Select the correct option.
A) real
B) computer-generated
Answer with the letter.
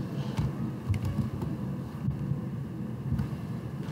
A